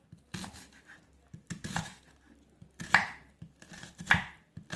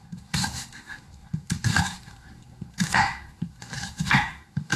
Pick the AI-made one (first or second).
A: second